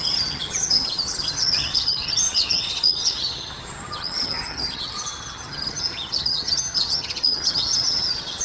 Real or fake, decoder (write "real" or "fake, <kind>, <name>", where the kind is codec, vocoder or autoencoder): fake, vocoder, HiFi-GAN